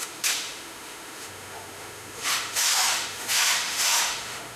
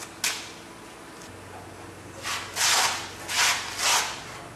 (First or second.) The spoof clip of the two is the first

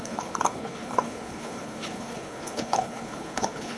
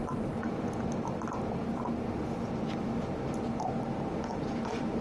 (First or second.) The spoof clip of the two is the first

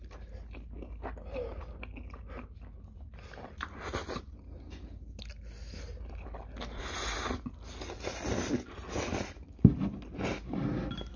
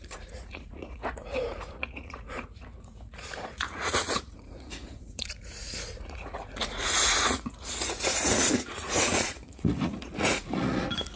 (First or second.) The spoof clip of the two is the second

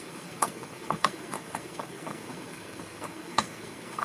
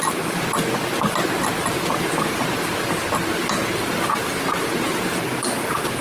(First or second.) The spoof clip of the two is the first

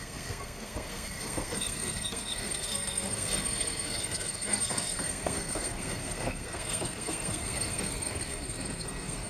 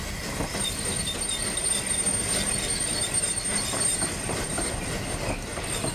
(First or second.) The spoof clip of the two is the first